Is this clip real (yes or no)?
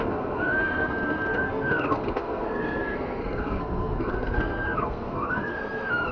no